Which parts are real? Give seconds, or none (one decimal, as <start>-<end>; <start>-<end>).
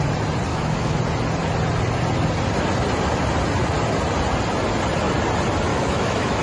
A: 0.0-0.5; 1.0-5.7